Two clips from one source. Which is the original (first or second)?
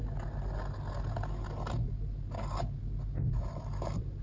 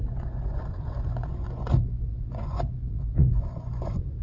first